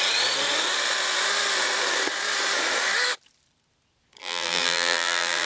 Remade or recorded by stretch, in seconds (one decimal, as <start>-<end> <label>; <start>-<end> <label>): 0.0-4.2 recorded; 4.2-5.5 remade